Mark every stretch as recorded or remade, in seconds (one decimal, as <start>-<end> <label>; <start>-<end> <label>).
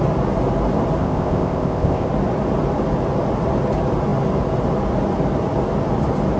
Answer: 0.0-1.0 recorded; 1.0-2.1 remade; 2.1-6.4 recorded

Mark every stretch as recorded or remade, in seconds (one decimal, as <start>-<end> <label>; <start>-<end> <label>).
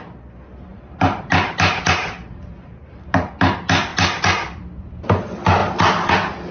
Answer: 0.0-0.7 recorded; 0.7-3.3 remade; 3.3-6.5 recorded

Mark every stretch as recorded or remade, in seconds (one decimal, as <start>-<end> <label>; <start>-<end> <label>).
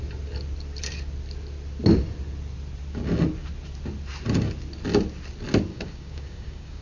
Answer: 0.0-5.7 recorded; 5.7-6.8 remade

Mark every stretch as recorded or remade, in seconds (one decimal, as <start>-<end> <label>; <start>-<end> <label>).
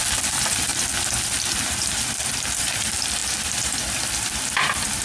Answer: 0.0-0.7 remade; 0.7-2.6 recorded; 2.6-5.0 remade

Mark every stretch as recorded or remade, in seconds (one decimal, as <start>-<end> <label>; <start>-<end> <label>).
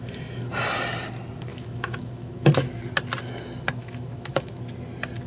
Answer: 0.0-1.5 recorded; 1.5-2.8 remade; 2.8-3.8 recorded; 3.8-4.6 remade; 4.6-5.3 recorded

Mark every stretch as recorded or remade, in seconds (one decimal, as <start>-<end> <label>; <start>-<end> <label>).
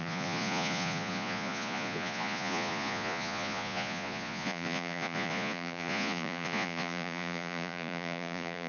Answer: 0.0-8.7 remade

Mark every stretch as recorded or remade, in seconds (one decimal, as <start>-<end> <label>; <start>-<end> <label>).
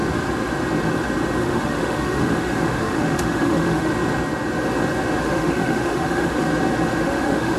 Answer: 0.0-1.4 recorded; 1.4-3.9 remade; 3.9-5.2 recorded; 5.2-6.5 remade; 6.5-7.0 recorded; 7.0-7.6 remade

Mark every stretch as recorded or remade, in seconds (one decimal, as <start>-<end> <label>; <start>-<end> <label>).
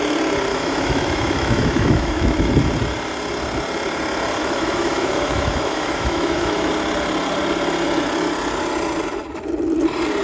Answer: 0.0-0.5 recorded; 0.5-2.5 remade; 2.5-4.4 recorded; 4.4-6.7 remade; 6.7-10.2 recorded